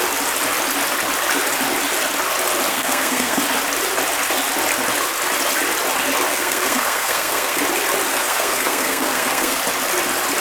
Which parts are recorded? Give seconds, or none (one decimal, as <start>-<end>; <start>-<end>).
0.0-2.7; 3.4-6.3; 7.6-8.1; 9.6-10.4